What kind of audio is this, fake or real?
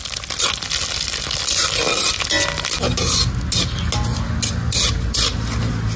real